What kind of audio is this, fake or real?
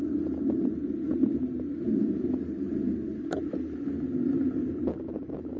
real